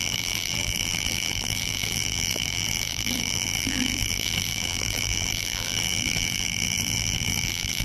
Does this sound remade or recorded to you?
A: remade